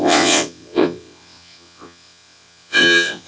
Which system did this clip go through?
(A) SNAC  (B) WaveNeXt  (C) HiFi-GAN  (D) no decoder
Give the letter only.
B